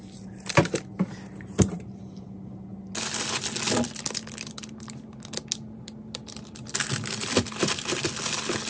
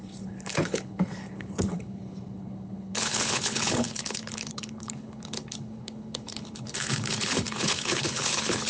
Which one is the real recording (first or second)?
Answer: first